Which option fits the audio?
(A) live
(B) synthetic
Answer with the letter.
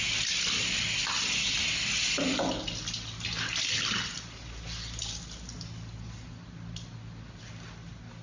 A